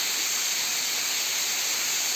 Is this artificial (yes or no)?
no